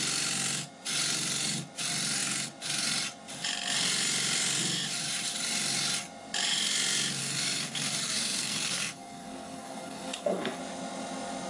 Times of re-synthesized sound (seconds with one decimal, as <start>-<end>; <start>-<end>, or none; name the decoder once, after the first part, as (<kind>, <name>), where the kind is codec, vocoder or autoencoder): 7.2-10.6 (codec, SNAC)